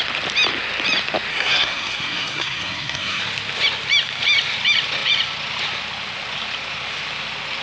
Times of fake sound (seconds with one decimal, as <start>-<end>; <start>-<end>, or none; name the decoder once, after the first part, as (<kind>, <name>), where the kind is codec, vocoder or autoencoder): 1.3-3.2 (codec, SNAC)